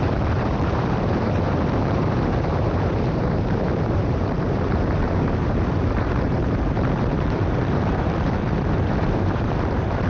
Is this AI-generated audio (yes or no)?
yes